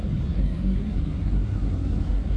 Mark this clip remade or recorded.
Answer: remade